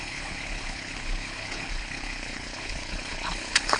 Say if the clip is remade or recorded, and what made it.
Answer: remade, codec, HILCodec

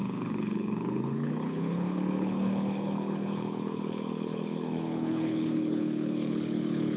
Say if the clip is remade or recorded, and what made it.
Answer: remade, codec, HILCodec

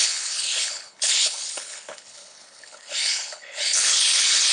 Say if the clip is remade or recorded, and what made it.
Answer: remade, codec, HILCodec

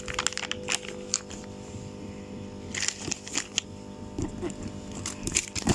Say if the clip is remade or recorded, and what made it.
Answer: recorded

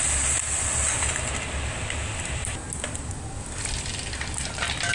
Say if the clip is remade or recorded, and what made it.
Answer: recorded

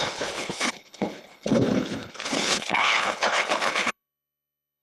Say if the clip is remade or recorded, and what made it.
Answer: remade, codec, HILCodec